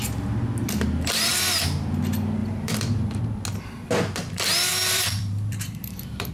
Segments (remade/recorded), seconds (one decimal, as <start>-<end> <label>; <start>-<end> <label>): 0.0-1.3 recorded; 1.3-2.0 remade; 2.0-2.4 recorded; 2.4-3.2 remade; 3.2-4.7 recorded; 4.7-6.3 remade